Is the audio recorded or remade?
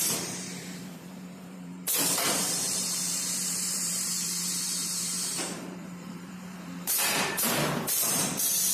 remade